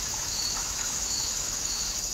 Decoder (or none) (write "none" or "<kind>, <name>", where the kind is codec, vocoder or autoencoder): autoencoder, DAC-VAE